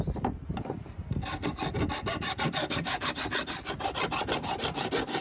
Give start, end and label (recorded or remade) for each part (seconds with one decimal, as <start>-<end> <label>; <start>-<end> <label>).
0.0-2.6 recorded; 2.6-3.2 remade; 3.2-5.2 recorded